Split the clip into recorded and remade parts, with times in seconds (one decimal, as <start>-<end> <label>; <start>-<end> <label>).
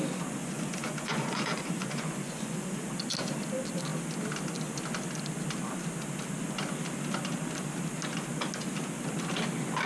0.0-0.4 recorded; 0.4-2.9 remade; 2.9-9.9 recorded